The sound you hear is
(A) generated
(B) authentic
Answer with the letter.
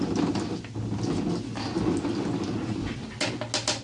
B